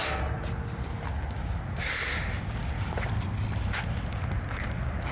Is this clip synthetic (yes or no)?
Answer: no